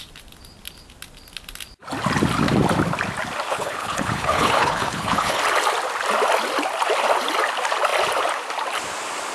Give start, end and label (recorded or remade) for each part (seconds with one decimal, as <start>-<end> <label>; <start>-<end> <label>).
0.0-3.5 recorded; 3.5-5.4 remade; 5.4-9.3 recorded